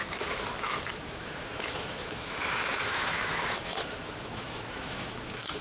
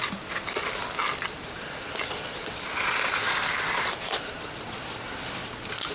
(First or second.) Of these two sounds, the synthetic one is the first